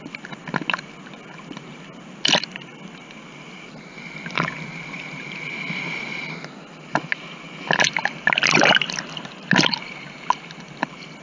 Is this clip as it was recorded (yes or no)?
yes